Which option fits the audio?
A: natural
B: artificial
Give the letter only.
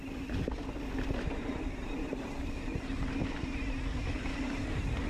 A